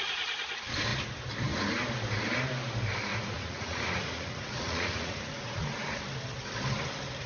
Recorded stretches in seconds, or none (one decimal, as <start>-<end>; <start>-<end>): 0.0-3.1; 6.0-7.3